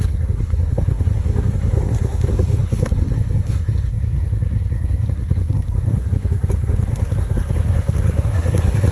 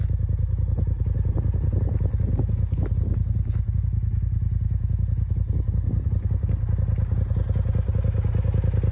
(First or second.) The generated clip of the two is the first